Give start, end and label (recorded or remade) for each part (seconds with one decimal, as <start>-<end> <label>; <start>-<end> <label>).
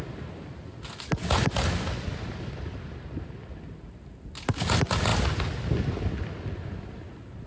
0.0-7.5 recorded